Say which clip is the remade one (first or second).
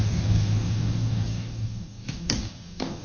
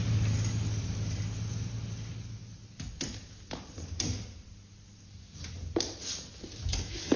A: first